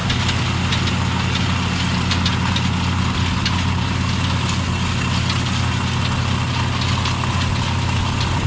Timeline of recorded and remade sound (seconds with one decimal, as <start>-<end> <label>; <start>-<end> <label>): 0.0-8.5 recorded